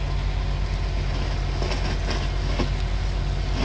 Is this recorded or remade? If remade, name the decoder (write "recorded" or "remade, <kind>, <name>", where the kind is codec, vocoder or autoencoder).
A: recorded